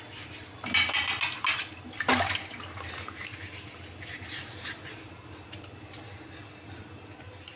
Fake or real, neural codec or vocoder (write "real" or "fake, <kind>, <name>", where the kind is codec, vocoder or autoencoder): real